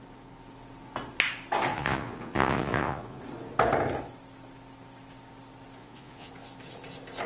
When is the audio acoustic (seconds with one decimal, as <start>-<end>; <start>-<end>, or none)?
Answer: 0.0-1.7; 3.2-5.8; 6.3-7.3